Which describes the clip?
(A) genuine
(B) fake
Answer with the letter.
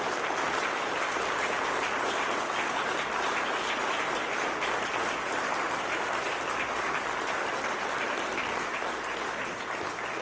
A